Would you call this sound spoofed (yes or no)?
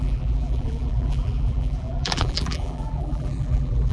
yes